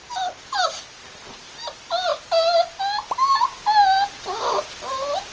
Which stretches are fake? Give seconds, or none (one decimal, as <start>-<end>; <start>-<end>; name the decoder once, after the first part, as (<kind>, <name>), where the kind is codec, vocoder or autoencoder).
none